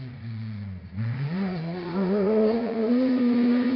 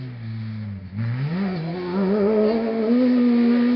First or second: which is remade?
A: first